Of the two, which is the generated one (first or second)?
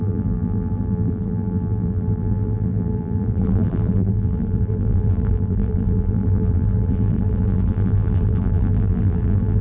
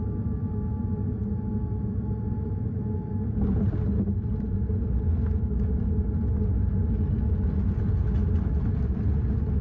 first